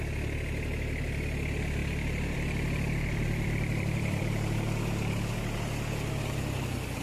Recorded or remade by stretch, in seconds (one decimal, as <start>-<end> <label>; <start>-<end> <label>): 0.0-1.8 recorded; 1.8-4.2 remade; 4.2-7.0 recorded